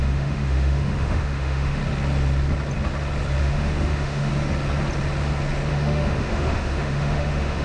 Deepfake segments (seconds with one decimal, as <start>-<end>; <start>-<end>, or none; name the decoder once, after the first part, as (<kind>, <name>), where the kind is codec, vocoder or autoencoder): 0.0-1.8 (autoencoder, DAC-VAE); 3.4-4.3; 5.7-7.6